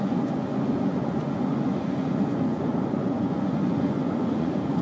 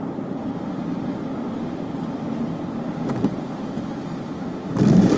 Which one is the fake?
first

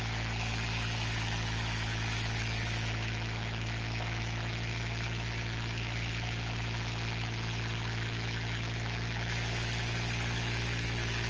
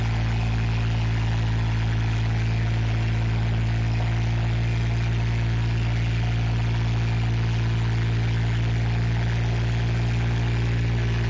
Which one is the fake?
first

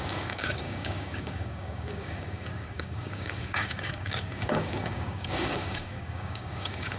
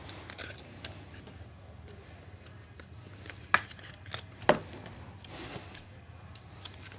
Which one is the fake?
first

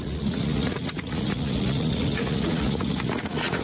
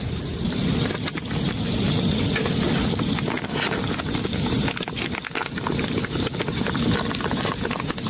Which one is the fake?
first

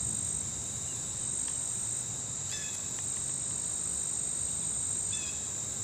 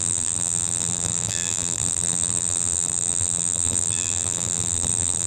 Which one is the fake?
second